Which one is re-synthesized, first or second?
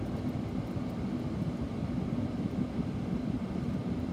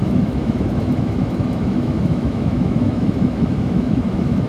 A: second